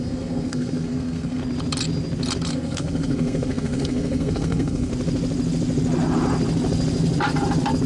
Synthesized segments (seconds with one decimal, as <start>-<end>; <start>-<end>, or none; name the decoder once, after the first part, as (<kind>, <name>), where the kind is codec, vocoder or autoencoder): 0.0-1.4 (codec, SNAC); 2.5-4.9